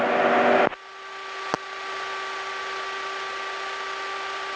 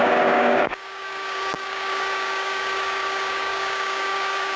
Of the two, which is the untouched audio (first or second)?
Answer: first